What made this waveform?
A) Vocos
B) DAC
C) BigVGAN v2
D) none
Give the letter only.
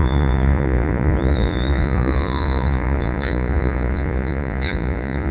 A